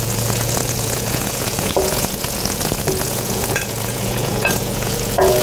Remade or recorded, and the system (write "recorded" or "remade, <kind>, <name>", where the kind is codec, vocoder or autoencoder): remade, vocoder, Vocos